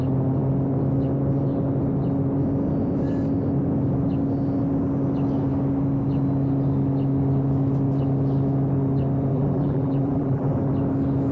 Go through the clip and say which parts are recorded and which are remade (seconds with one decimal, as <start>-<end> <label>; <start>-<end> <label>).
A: 0.0-9.3 recorded; 9.3-10.5 remade; 10.5-11.3 recorded